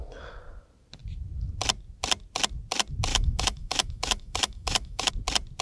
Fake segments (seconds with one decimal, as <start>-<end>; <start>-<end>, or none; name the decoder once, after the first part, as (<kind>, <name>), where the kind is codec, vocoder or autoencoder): 3.1-5.1 (autoencoder, DAC-VAE)